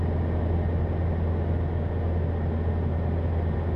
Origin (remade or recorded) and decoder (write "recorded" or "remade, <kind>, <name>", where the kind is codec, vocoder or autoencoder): recorded